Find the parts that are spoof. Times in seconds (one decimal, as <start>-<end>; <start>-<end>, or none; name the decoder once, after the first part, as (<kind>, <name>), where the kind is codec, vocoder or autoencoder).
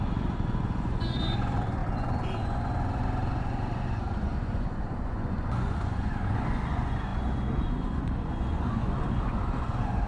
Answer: 0.0-10.1 (vocoder, Vocos)